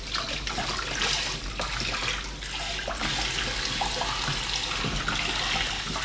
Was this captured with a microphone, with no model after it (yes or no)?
yes